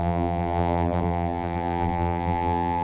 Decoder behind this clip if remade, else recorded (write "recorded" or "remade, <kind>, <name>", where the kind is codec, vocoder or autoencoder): remade, vocoder, BigVGAN v2